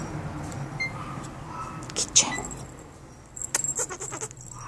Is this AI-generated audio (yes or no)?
no